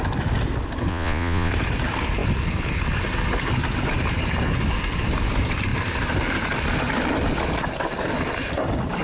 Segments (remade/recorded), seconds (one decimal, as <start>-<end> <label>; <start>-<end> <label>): 0.0-0.9 recorded; 0.9-1.5 remade; 1.5-9.0 recorded